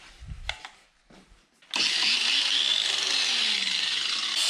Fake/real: real